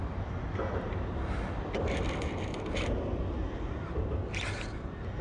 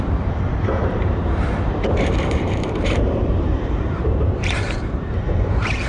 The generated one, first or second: second